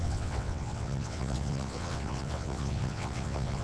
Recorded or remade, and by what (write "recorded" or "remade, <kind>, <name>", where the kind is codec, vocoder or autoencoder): remade, vocoder, WaveNeXt